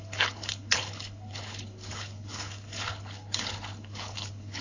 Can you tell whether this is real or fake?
fake